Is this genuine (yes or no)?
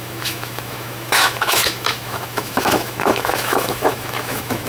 no